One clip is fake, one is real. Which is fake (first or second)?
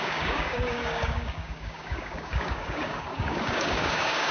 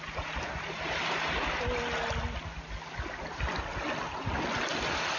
first